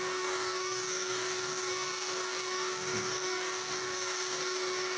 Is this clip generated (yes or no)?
yes